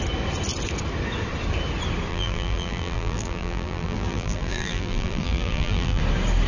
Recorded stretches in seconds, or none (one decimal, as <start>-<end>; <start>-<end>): 0.0-2.1; 6.0-6.5